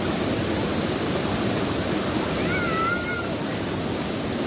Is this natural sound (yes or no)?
yes